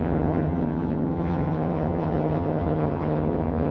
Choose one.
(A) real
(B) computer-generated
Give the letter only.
B